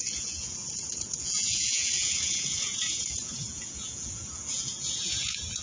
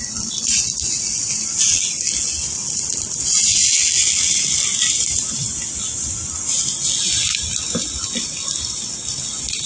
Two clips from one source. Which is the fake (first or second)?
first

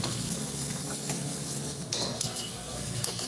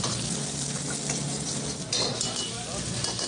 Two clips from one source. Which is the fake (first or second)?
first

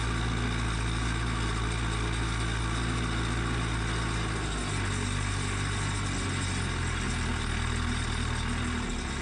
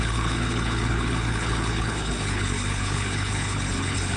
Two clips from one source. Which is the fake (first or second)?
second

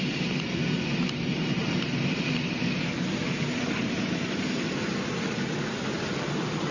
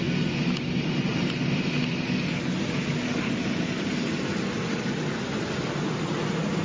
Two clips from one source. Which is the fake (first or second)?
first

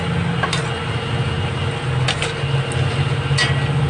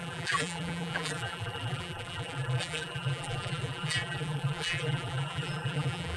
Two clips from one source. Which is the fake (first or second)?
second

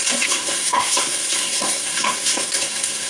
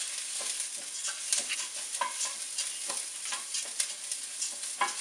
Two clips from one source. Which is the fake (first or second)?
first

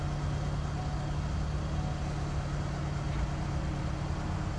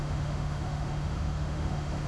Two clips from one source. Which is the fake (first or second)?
second